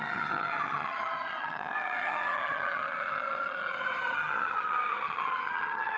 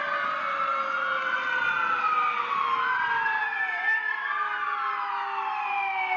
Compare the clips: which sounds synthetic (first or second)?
first